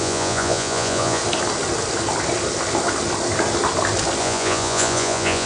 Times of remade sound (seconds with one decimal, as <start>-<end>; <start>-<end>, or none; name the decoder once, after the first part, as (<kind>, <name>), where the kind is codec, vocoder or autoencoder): 0.0-1.2 (vocoder, Vocos); 4.2-5.5

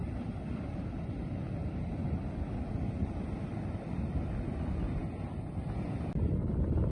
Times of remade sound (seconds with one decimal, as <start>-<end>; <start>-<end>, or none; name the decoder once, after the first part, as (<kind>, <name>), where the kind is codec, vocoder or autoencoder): none

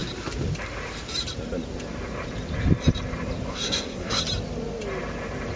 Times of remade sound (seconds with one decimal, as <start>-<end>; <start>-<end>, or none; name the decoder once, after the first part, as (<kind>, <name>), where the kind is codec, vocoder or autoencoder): 3.5-4.2 (codec, SNAC)

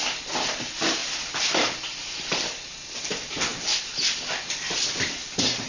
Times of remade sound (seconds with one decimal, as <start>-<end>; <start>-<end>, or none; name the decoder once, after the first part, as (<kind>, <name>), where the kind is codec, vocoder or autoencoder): none

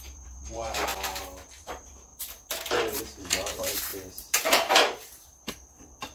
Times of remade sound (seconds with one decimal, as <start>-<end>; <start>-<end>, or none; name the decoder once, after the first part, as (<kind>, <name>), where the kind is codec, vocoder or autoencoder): 0.0-0.9 (vocoder, BigVGAN v2); 1.6-2.1; 3.0-6.1

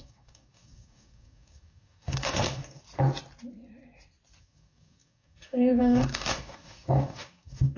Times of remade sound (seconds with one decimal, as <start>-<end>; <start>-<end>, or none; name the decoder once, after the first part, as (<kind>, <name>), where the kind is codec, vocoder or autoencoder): 0.0-2.8 (codec, DAC); 4.4-7.8

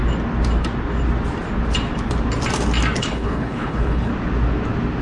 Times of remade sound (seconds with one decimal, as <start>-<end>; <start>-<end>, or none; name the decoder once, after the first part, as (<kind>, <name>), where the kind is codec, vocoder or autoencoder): 3.0-4.1 (codec, HILCodec)

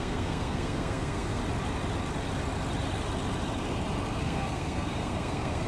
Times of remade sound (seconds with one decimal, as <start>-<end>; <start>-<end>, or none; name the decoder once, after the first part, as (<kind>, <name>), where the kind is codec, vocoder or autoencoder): 0.0-1.4 (codec, SNAC); 4.2-5.7